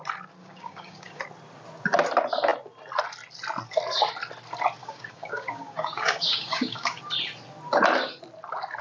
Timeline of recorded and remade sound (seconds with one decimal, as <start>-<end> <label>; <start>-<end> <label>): 0.0-0.4 recorded; 0.4-1.2 remade; 1.2-4.8 recorded; 4.8-7.0 remade; 7.0-8.8 recorded